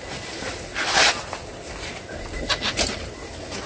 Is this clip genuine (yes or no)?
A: yes